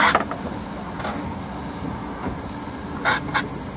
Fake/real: real